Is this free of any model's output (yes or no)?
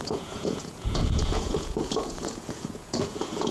no